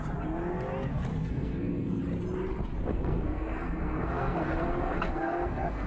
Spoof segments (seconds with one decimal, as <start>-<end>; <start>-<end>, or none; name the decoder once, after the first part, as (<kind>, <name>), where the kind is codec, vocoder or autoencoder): 1.1-2.0 (codec, SNAC); 2.9-5.9